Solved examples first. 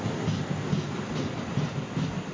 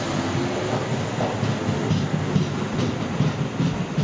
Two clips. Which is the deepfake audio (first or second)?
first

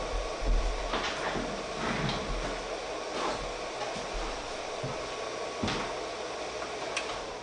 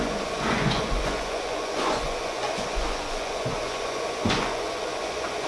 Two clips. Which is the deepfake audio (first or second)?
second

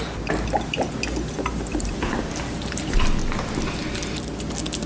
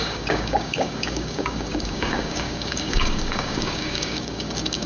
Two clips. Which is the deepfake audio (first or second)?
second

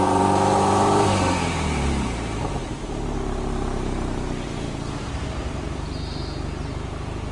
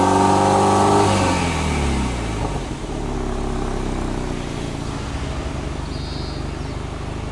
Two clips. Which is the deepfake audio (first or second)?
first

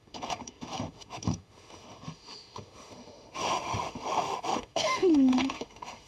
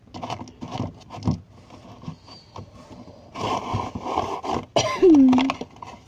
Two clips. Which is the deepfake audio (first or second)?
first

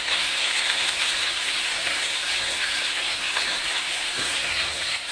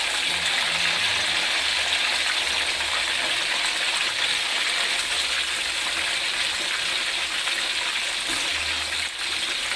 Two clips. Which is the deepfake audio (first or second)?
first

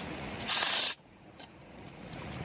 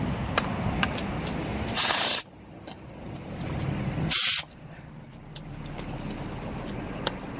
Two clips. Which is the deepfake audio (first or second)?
first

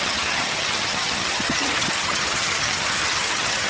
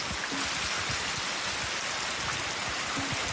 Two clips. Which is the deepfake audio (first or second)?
first